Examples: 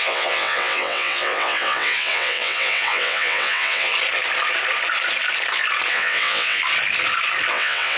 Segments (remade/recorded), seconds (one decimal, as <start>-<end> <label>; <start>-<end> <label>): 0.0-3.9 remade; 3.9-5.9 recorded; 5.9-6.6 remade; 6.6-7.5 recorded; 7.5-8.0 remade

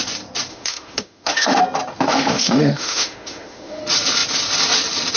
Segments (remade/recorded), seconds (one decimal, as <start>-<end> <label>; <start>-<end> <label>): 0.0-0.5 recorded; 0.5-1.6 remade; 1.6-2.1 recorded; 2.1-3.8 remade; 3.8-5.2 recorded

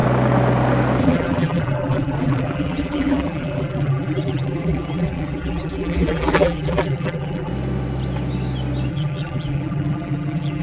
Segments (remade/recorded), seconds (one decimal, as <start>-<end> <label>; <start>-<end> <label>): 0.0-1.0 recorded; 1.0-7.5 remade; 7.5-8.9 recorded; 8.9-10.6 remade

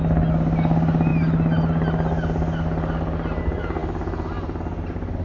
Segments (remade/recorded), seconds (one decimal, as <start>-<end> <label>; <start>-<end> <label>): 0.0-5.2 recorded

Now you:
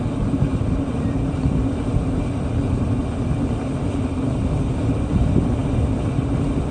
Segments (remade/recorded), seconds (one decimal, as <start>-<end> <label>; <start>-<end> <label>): 0.0-6.7 recorded

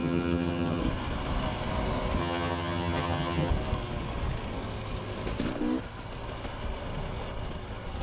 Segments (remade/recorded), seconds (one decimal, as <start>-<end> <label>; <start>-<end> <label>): 0.0-0.8 remade; 0.8-2.2 recorded; 2.2-3.5 remade; 3.5-8.0 recorded

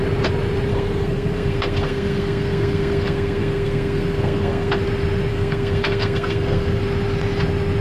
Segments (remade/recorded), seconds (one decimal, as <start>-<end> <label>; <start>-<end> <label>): 0.0-0.7 recorded; 0.7-4.8 remade; 4.8-5.3 recorded; 5.3-6.8 remade; 6.8-7.8 recorded

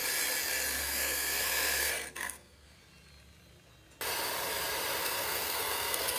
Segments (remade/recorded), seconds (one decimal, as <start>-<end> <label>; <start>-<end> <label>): 0.0-0.8 recorded; 0.8-2.8 remade; 2.8-5.0 recorded; 5.0-6.2 remade